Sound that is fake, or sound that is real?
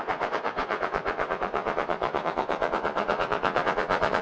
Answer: fake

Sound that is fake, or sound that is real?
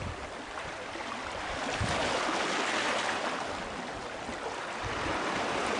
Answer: real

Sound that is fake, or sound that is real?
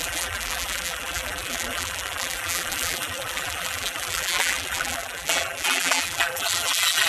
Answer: fake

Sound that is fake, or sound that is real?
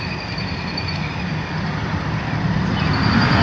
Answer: real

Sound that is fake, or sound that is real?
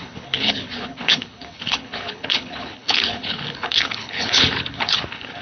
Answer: fake